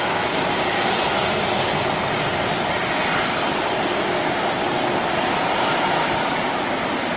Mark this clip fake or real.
real